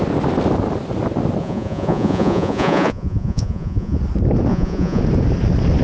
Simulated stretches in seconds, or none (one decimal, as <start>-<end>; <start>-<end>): 1.4-4.0; 4.5-5.0